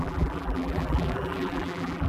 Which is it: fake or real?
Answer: fake